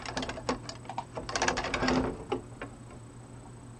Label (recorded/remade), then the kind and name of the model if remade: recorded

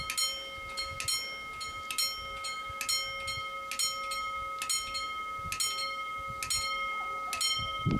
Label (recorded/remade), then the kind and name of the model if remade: recorded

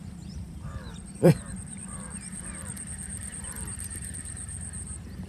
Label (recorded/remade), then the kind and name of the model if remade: remade, vocoder, BigVGAN v2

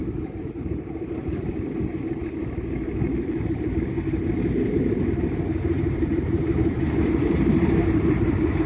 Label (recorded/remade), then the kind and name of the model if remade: remade, vocoder, BigVGAN v2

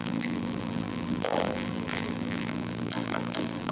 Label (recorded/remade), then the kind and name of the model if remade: remade, vocoder, BigVGAN v2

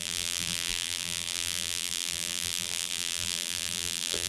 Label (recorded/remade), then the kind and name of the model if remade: remade, vocoder, BigVGAN v2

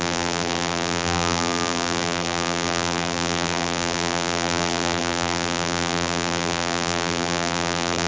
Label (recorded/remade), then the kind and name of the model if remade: remade, vocoder, BigVGAN v2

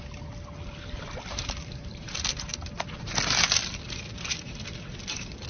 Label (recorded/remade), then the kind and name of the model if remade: remade, vocoder, BigVGAN v2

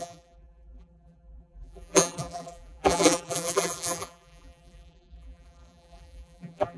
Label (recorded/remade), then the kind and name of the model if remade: remade, vocoder, BigVGAN v2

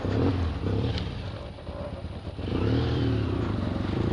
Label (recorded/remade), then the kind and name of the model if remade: remade, vocoder, BigVGAN v2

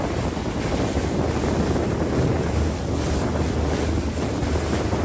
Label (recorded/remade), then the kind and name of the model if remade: recorded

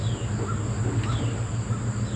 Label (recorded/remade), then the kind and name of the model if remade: recorded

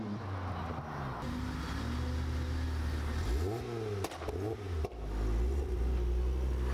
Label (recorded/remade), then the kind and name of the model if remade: recorded